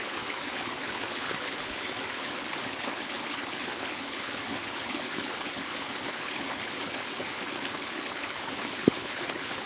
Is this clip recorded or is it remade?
remade